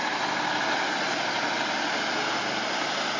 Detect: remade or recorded recorded